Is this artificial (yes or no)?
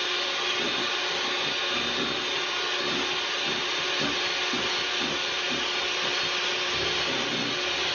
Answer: no